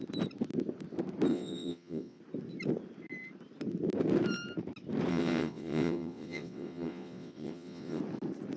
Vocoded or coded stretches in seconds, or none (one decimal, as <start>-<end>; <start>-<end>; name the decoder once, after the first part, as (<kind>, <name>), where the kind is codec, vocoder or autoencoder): 1.3-2.2 (vocoder, WaveNeXt); 5.1-8.0